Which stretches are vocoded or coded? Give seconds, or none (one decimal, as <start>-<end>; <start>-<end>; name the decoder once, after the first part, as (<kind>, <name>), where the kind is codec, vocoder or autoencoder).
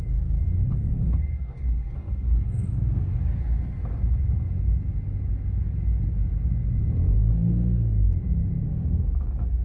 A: 0.7-3.2 (codec, SNAC)